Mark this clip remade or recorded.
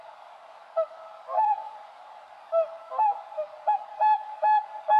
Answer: remade